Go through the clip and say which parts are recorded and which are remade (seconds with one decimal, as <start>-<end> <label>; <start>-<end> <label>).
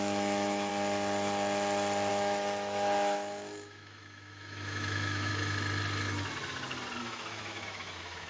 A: 0.0-0.7 remade; 0.7-2.1 recorded; 2.1-5.3 remade; 5.3-7.0 recorded; 7.0-8.3 remade